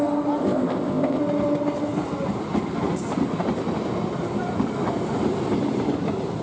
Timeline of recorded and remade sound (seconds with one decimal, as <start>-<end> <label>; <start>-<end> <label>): 0.0-0.4 recorded; 0.4-1.2 remade; 1.2-6.4 recorded